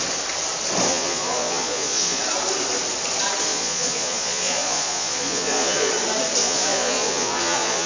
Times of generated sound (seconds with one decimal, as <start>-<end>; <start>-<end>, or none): 0.9-2.2; 3.5-5.9; 6.4-7.9

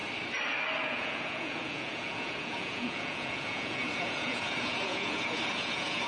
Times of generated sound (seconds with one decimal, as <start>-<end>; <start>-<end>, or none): 0.8-6.1

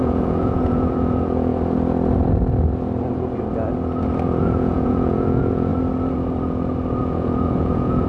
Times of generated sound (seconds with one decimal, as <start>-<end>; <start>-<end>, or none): 0.0-1.5; 4.4-5.7; 7.0-8.1

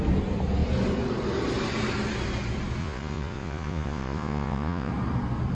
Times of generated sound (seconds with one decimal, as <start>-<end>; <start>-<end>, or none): 2.8-4.9

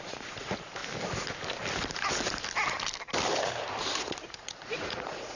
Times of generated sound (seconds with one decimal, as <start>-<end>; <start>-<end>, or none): 0.0-0.8; 4.0-5.4